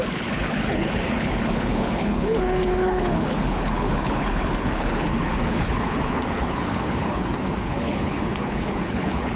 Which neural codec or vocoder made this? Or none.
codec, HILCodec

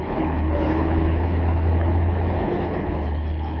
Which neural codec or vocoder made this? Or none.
codec, HILCodec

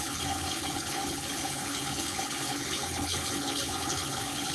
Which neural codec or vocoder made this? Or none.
codec, HILCodec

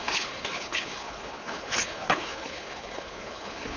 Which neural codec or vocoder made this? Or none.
codec, HILCodec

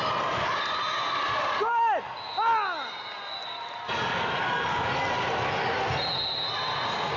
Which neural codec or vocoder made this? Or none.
none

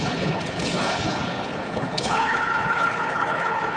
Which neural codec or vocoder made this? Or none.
codec, HILCodec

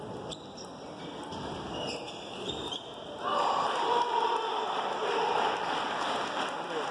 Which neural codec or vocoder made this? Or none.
none